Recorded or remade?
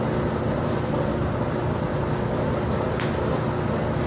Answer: recorded